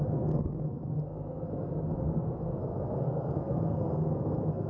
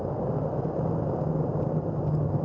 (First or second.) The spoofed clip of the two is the first